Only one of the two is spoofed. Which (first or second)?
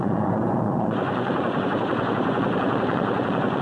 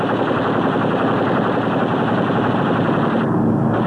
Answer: first